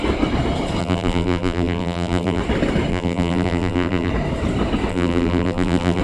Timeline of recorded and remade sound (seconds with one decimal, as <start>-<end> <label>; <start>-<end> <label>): 0.0-0.8 recorded; 0.8-2.4 remade; 2.4-2.9 recorded; 2.9-4.1 remade; 4.1-4.9 recorded; 4.9-6.0 remade